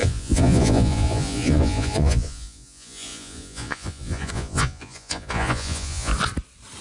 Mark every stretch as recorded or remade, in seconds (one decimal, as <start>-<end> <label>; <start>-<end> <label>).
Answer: 0.0-6.1 remade; 6.1-6.8 recorded